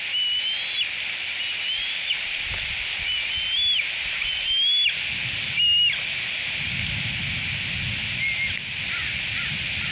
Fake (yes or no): no